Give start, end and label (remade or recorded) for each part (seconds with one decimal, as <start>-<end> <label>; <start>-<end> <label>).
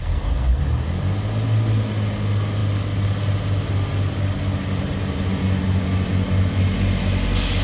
0.0-0.6 remade; 0.6-7.6 recorded